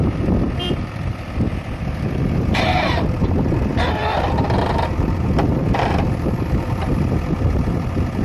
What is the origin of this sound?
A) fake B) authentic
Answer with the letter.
A